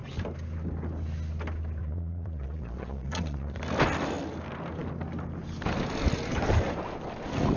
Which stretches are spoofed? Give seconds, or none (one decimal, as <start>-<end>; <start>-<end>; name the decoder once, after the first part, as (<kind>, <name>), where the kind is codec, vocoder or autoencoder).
1.8-3.6 (vocoder, Vocos)